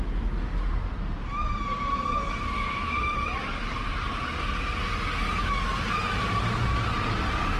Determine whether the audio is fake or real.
real